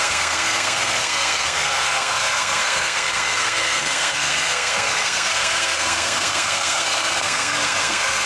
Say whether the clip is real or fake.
fake